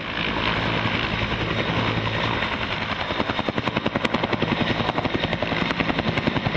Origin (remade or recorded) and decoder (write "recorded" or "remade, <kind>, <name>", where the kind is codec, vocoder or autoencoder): recorded